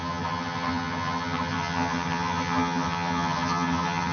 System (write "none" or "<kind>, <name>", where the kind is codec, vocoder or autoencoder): vocoder, HiFi-GAN